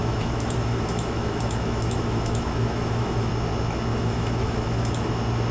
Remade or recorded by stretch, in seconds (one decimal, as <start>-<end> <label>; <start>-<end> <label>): 0.0-3.3 remade; 3.3-3.9 recorded; 3.9-5.1 remade; 5.1-5.5 recorded